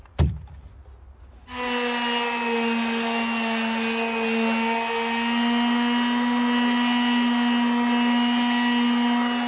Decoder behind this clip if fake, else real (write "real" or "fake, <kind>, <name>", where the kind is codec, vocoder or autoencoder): real